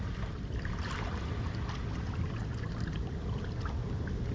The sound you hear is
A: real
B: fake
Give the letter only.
A